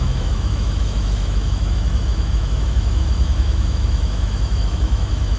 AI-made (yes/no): yes